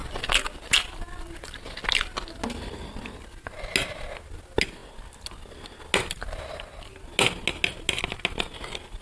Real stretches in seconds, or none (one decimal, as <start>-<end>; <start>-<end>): 0.0-9.0

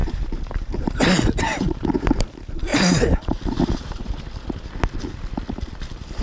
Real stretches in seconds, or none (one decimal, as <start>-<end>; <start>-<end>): 1.0-1.5; 2.0-2.7; 4.2-6.2

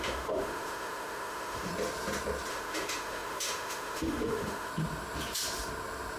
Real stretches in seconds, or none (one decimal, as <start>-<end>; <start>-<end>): 1.7-2.5; 4.7-6.2

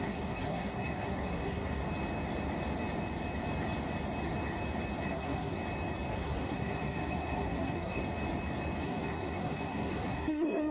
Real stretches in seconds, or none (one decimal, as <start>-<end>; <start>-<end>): 1.8-5.1; 5.6-6.1; 8.0-8.8

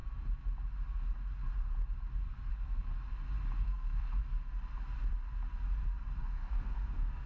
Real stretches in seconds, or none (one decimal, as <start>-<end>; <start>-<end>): 0.0-2.5; 2.9-3.6; 4.2-6.2

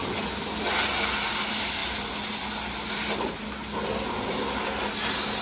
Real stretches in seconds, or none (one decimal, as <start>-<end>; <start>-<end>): 0.0-5.4

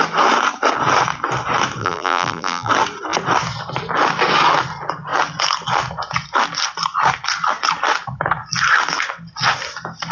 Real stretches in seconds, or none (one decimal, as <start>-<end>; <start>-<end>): 0.0-1.8; 2.7-10.1